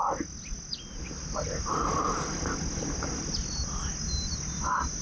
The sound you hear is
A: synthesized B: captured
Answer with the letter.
B